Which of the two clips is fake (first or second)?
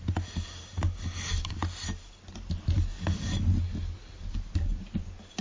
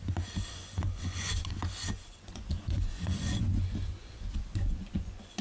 second